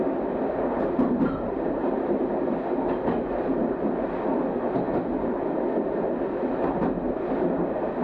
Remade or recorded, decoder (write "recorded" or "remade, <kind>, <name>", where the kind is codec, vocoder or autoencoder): recorded